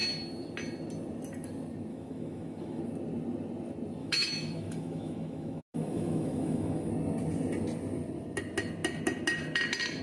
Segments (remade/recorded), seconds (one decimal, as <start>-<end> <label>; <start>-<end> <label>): 0.0-1.9 recorded; 1.9-2.8 remade; 2.8-4.0 recorded; 4.0-6.9 remade; 6.9-10.0 recorded